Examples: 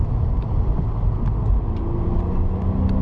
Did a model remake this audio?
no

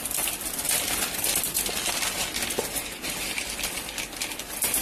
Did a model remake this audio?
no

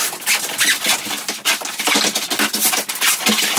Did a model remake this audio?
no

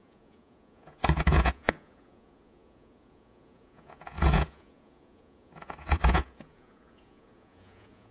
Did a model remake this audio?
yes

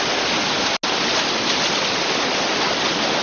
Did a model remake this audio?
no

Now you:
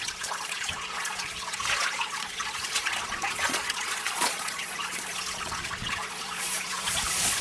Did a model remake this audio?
yes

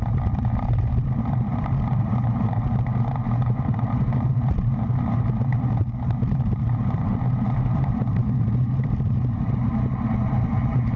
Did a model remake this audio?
yes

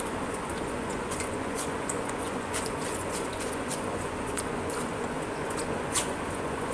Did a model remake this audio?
yes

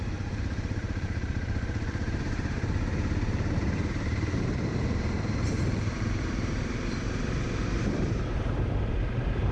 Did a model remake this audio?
yes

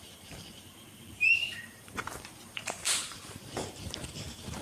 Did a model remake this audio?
yes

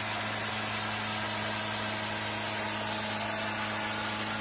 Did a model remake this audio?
no